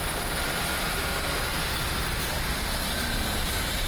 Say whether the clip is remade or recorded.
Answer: recorded